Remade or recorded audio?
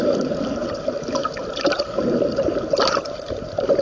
remade